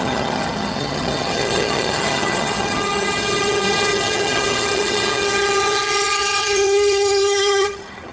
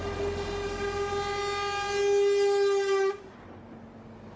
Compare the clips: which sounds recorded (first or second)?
second